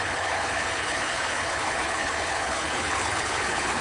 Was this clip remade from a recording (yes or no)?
yes